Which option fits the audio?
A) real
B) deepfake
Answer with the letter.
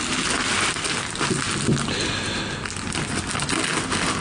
A